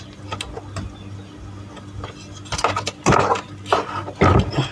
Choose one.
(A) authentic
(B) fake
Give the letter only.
A